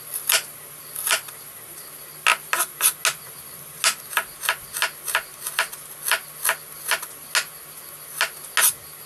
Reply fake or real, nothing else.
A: real